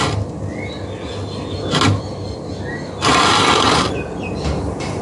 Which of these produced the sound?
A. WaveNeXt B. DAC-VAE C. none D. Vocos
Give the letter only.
C